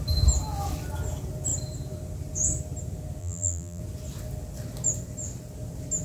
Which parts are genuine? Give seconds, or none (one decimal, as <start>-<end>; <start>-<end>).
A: 0.0-3.2; 3.8-6.0